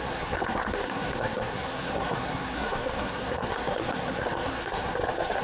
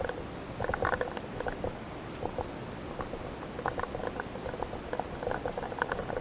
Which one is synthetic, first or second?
first